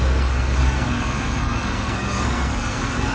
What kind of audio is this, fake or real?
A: fake